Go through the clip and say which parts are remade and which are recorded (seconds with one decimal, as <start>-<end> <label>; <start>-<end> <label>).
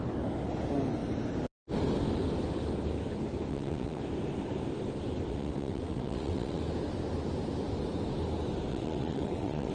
0.0-3.5 recorded; 3.5-4.0 remade; 4.0-5.3 recorded; 5.3-6.6 remade; 6.6-8.7 recorded; 8.7-9.7 remade